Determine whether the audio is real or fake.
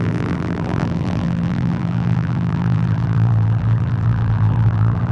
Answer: fake